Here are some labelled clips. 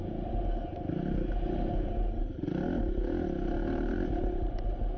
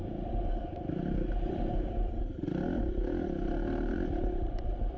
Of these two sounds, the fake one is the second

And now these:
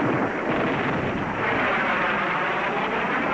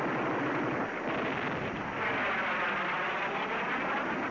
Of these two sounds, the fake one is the first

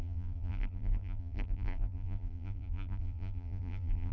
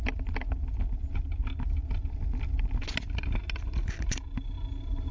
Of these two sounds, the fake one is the first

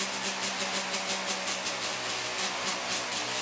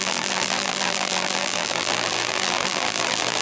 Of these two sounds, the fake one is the second